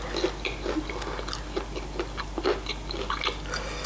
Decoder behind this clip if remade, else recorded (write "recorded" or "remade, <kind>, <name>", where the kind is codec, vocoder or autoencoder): recorded